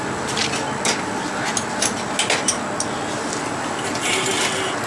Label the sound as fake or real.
real